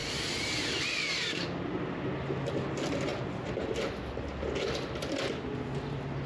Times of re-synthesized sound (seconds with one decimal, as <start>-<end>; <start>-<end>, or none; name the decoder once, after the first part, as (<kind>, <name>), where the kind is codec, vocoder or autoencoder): none

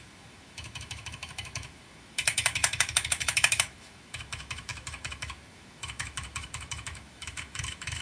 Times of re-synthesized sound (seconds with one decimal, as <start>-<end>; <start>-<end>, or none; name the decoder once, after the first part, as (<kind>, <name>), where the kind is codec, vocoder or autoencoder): 0.0-8.0 (autoencoder, DAC-VAE)

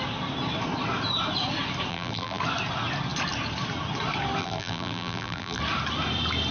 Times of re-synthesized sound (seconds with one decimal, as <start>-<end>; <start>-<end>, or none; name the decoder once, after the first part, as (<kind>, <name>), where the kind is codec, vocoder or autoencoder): 1.9-2.4 (vocoder, BigVGAN v2); 4.4-5.6

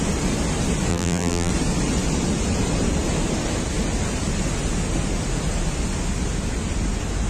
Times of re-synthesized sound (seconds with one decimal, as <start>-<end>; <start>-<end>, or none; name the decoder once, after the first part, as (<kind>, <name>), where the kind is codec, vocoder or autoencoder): 0.9-1.5 (vocoder, BigVGAN v2)

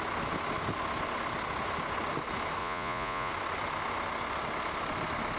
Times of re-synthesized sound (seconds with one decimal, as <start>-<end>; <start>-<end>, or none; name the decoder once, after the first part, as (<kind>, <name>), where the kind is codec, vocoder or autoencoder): 2.6-3.3 (vocoder, Vocos)